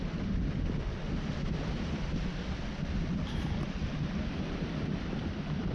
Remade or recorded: recorded